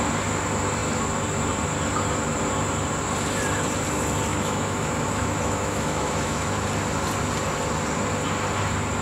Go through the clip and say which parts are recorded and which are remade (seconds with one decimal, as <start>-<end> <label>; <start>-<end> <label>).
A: 0.0-4.3 recorded; 4.3-6.5 remade; 6.5-9.0 recorded